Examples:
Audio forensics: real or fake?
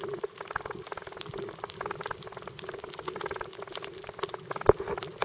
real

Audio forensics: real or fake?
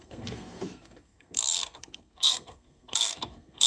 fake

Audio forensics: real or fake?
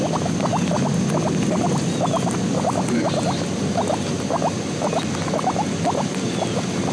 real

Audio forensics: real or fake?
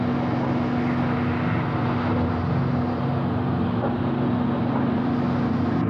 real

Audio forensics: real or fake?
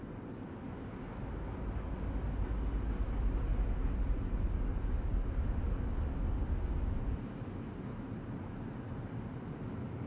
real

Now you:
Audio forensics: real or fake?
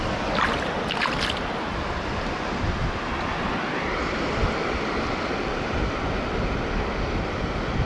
real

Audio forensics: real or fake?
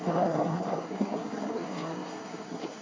fake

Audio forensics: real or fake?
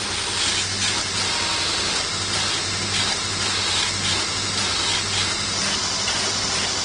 real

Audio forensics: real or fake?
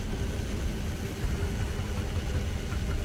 real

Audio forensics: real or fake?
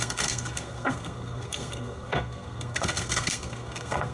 fake